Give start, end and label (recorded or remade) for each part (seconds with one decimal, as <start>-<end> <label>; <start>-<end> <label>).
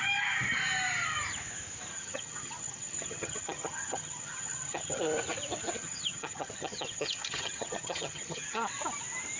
0.0-1.9 recorded; 1.9-5.0 remade; 5.0-5.8 recorded; 5.8-8.6 remade; 8.6-9.4 recorded